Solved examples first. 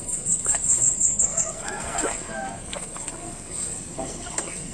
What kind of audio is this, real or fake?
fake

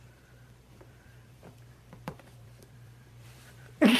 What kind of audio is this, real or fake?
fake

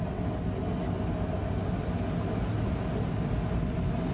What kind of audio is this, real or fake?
real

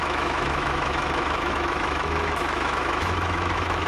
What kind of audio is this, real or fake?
fake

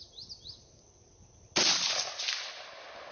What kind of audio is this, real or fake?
real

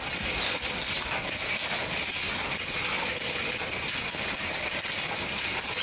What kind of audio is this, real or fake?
real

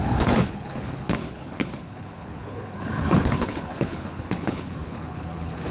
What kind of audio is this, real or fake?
fake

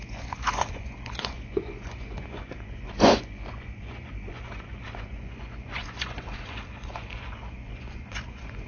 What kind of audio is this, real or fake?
fake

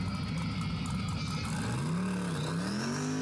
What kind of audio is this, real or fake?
real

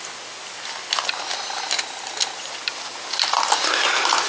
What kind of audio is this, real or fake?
real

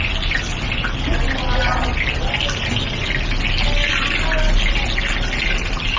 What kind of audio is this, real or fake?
real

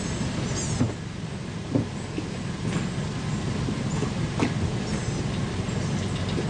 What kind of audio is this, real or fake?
real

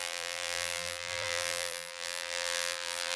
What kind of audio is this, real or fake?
fake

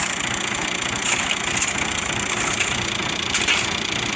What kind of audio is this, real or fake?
real